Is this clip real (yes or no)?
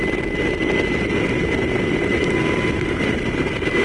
yes